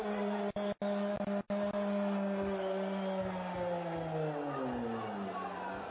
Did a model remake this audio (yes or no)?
no